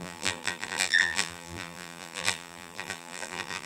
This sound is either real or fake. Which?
fake